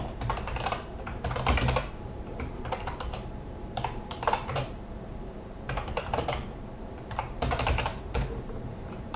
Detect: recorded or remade remade